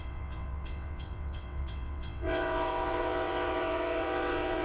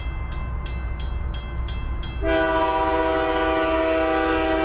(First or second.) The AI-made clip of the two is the first